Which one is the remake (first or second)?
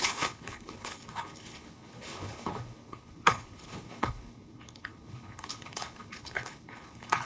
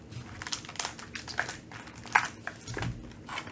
first